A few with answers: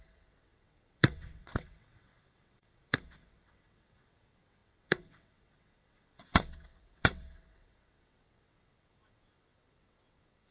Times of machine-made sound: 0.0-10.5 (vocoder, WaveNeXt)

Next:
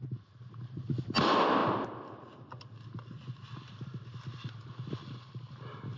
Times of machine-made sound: none

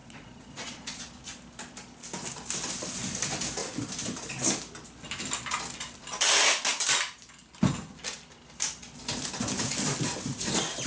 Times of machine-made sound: 0.0-1.0 (vocoder, Vocos)

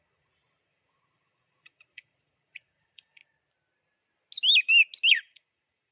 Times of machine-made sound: 0.0-3.2 (vocoder, Vocos); 5.1-5.9

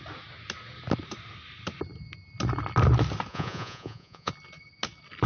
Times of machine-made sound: 3.3-4.3 (vocoder, Vocos)

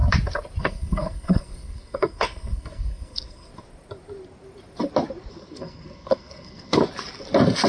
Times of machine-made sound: 0.6-3.5 (codec, SNAC); 5.3-6.8

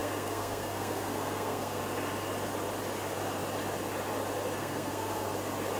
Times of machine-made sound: 0.0-1.8 (codec, SNAC); 4.6-5.3

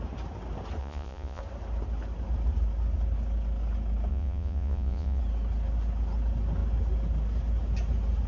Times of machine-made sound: 0.8-1.4 (vocoder, Vocos); 4.1-5.2